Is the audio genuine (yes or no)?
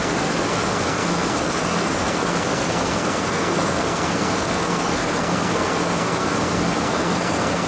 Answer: no